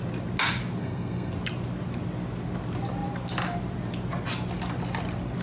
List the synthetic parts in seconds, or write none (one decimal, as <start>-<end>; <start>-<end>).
0.8-1.3